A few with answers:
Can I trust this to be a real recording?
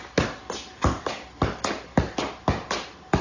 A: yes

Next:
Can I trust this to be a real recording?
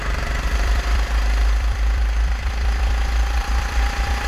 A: no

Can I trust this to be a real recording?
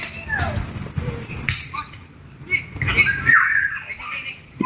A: yes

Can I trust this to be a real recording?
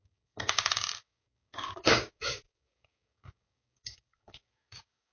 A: no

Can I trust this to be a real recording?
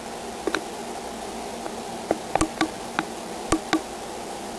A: yes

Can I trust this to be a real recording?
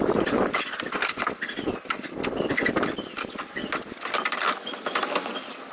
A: yes